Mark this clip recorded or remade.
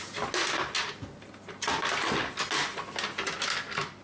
recorded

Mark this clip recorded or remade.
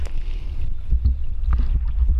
recorded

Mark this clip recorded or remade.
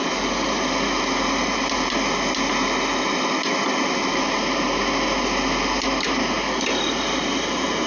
recorded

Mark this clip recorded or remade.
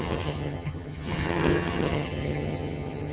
remade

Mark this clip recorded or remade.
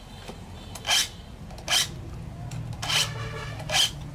recorded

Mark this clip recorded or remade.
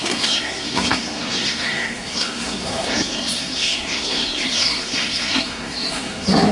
remade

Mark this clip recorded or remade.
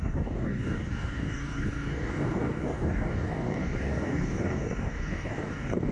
remade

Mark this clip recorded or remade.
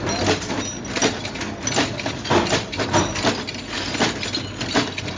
recorded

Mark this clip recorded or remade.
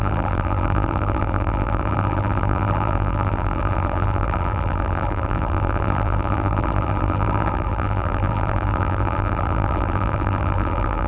remade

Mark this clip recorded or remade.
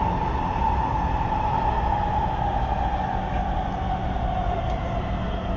recorded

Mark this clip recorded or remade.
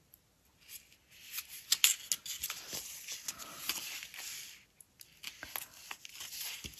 recorded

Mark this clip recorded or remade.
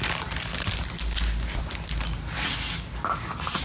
recorded